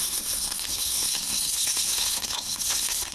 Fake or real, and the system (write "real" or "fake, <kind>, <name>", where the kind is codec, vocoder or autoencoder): fake, codec, SNAC